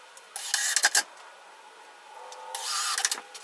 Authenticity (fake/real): real